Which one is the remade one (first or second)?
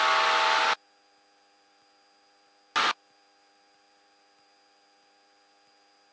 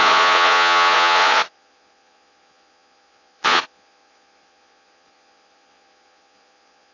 second